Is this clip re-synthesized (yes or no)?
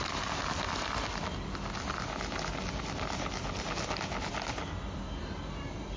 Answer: no